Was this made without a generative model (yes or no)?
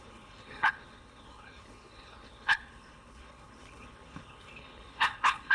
no